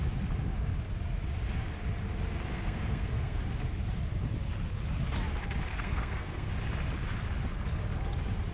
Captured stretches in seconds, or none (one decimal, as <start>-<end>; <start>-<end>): 0.0-2.5; 3.4-5.7; 6.5-8.5